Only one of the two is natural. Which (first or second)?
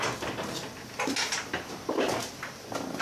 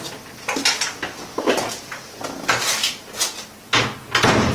second